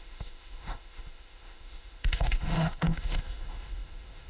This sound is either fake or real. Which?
fake